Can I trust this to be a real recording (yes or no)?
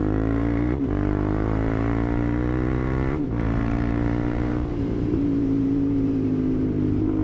no